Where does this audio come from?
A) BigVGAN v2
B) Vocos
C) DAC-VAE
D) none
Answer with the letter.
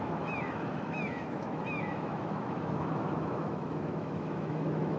C